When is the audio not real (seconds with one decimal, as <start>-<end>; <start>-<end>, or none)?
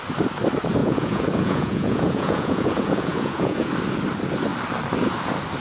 0.8-3.7